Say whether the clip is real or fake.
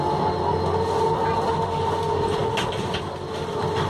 real